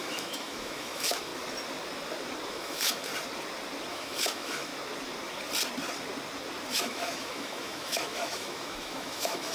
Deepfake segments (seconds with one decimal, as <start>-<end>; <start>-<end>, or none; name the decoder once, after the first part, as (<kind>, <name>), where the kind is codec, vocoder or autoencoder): 0.0-1.3 (autoencoder, DAC-VAE); 2.5-3.1; 3.9-4.7; 6.7-9.5